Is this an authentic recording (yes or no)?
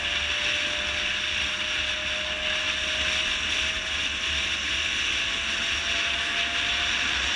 yes